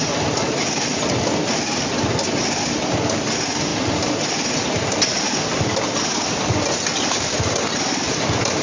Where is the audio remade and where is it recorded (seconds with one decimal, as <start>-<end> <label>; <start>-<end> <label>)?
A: 0.0-8.6 recorded